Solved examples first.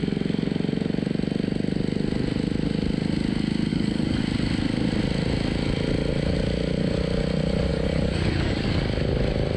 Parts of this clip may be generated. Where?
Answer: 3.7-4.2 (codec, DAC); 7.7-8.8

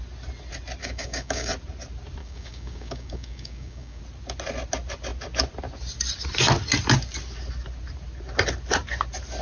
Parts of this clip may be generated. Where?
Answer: 0.8-1.5 (codec, DAC); 2.2-4.0

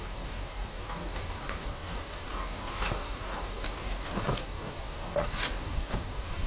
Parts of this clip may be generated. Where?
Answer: 0.0-6.5 (codec, DAC)